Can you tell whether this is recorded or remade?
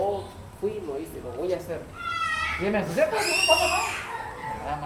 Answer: recorded